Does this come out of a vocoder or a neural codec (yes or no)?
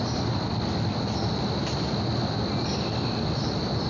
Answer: no